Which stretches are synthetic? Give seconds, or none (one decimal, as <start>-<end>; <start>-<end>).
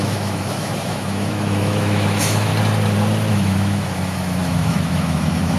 0.0-2.5; 3.3-5.6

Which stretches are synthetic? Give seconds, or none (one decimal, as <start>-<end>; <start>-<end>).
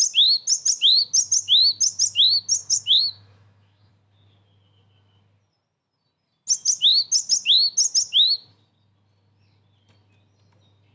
2.6-3.9